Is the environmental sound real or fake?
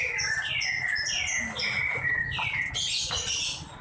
real